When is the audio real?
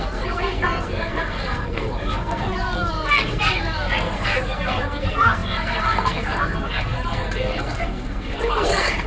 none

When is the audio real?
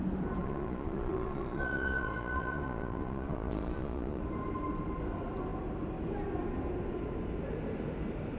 0.0-0.4; 4.2-8.4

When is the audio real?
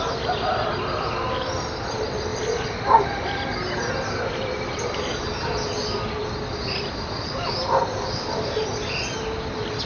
0.0-9.9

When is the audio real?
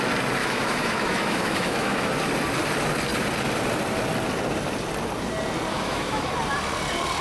0.0-0.4; 2.1-5.7; 6.3-7.2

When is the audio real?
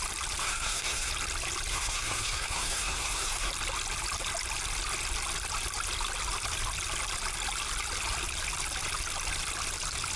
0.0-0.4; 1.1-1.7; 3.5-10.2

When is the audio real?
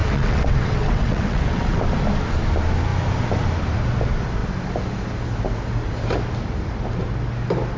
1.8-7.8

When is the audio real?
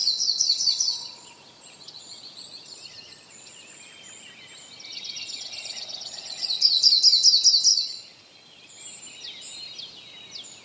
4.0-4.9; 7.0-7.7; 8.8-10.6